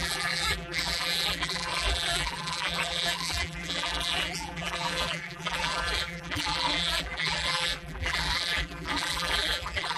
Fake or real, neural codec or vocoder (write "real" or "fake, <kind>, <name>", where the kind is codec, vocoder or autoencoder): fake, vocoder, BigVGAN v2